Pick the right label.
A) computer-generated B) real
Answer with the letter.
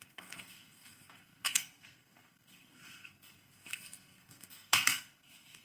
A